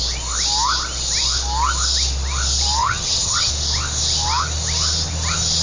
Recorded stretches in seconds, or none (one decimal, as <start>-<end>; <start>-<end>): 0.0-2.8; 3.5-5.6